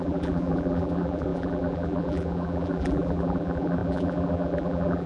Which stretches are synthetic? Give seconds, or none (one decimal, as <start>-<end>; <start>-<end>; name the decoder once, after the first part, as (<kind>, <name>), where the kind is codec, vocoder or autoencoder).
0.0-5.1 (vocoder, BigVGAN v2)